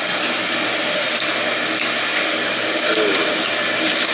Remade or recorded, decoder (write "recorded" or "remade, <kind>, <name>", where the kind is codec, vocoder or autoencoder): recorded